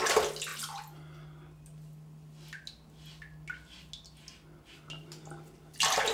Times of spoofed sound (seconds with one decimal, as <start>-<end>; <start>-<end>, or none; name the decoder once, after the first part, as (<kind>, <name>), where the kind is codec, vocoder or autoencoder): none